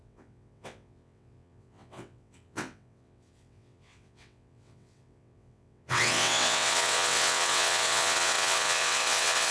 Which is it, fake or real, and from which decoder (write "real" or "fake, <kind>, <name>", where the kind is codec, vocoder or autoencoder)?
fake, vocoder, WaveNeXt